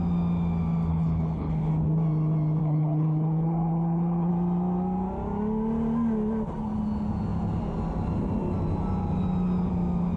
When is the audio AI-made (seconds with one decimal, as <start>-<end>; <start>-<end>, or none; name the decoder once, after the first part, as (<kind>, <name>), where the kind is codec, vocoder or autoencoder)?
0.9-1.7 (codec, HILCodec); 2.6-4.3